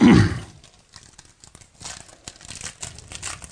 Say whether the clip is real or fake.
real